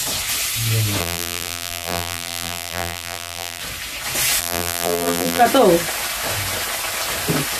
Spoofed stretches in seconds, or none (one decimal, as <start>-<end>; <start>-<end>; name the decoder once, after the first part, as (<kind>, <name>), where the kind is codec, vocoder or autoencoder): 1.0-3.6 (vocoder, BigVGAN v2); 4.4-5.4

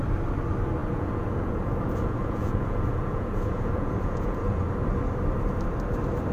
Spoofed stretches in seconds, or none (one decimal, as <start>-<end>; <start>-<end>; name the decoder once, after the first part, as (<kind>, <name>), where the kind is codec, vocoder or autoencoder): 0.8-4.6 (vocoder, Vocos)

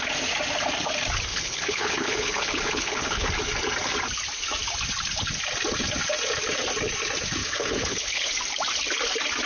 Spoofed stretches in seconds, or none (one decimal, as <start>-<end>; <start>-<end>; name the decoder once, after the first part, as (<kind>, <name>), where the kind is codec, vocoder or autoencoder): 1.3-3.3 (codec, HILCodec); 7.4-8.3

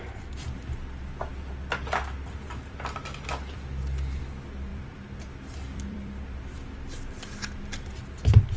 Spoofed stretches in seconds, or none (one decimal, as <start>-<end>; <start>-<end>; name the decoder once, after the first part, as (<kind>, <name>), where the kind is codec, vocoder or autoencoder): 4.7-6.4 (vocoder, BigVGAN v2)

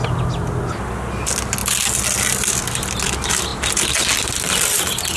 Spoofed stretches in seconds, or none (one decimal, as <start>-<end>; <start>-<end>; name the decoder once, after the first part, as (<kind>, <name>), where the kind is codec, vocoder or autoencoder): none

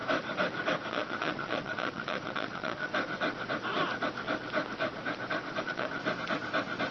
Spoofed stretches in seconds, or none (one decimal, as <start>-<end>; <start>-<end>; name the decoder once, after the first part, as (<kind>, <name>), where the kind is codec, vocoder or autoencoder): 0.9-2.9 (vocoder, Vocos); 5.6-6.0